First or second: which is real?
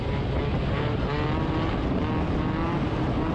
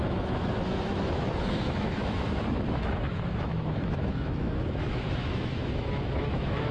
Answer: first